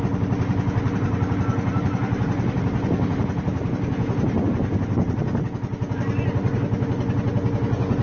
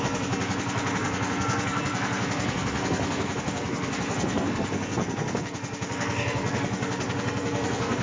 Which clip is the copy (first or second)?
second